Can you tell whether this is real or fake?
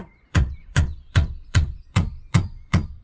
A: fake